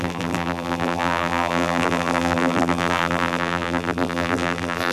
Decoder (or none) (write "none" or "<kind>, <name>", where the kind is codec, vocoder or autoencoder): vocoder, BigVGAN v2